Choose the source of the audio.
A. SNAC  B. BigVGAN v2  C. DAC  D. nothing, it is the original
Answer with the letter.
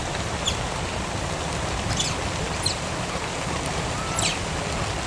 D